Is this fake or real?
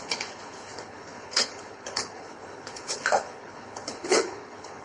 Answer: fake